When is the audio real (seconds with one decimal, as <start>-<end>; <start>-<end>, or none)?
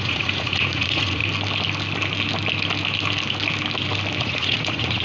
1.2-4.2